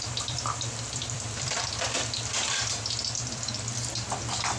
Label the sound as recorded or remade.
remade